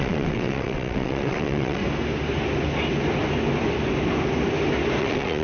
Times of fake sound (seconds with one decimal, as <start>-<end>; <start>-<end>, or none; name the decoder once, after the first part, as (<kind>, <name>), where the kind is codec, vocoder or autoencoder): 0.0-1.8 (vocoder, WaveNeXt); 5.0-5.4